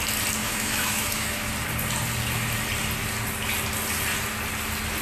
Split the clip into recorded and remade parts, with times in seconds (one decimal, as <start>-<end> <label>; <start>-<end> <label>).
0.0-0.4 recorded; 0.4-1.5 remade; 1.5-5.0 recorded